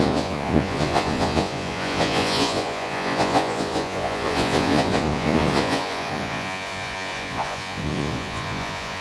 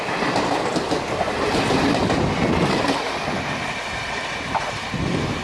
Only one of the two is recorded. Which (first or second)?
second